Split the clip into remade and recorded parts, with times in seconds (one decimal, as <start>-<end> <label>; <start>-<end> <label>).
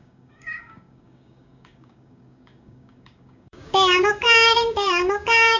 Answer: 0.0-5.6 remade